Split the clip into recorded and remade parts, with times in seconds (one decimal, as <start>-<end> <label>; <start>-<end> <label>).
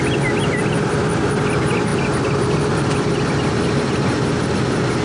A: 0.0-5.0 recorded